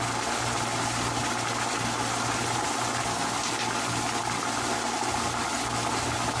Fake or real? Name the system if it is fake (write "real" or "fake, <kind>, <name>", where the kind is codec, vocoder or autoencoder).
real